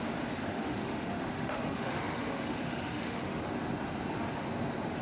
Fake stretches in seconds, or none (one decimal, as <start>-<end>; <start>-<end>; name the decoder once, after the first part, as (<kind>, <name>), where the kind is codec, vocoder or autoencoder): 0.4-3.4 (autoencoder, DAC-VAE)